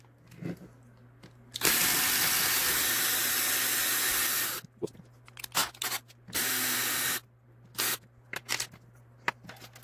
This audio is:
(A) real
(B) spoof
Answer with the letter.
A